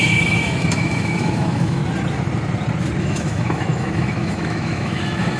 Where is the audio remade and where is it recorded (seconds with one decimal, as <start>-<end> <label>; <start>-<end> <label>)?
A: 0.0-1.8 remade; 1.8-3.0 recorded; 3.0-5.4 remade